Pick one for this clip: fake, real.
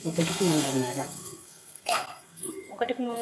fake